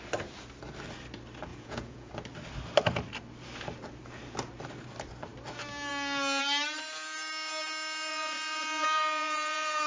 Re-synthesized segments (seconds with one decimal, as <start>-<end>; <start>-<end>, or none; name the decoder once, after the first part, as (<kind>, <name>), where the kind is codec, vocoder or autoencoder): 1.5-2.1 (vocoder, Vocos); 8.1-9.9